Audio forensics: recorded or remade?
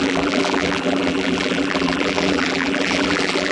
remade